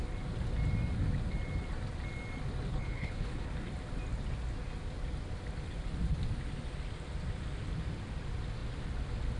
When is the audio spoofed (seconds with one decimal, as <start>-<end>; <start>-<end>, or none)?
2.7-3.5